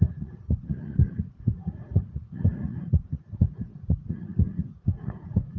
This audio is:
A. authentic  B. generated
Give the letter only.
B